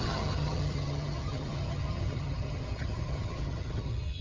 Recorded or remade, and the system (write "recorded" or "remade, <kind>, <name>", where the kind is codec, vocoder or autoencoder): remade, vocoder, HiFi-GAN